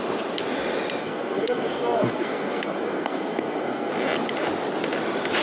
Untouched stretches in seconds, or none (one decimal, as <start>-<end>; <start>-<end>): 0.0-1.0; 3.9-5.4